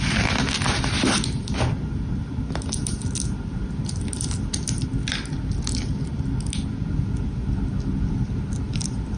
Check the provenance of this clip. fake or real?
real